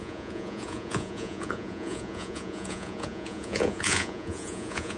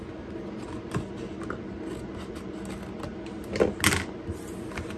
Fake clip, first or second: first